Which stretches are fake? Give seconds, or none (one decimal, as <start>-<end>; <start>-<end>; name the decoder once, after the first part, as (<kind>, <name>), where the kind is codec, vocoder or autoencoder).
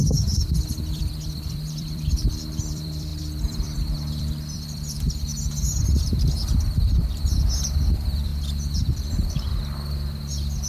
0.0-5.3 (vocoder, BigVGAN v2); 7.6-8.3; 9.1-9.5